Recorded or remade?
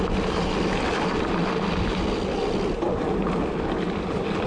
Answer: recorded